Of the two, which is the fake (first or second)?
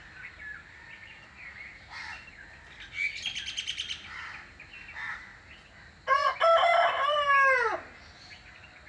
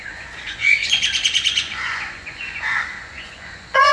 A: second